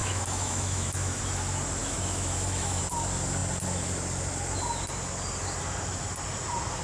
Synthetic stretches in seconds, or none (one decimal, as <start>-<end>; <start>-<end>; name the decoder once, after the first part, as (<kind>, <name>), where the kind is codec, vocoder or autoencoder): 0.0-1.2 (autoencoder, DAC-VAE); 1.8-2.8